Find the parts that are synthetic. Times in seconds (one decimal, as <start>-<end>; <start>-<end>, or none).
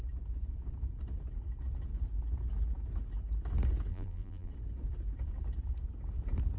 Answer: 3.9-4.5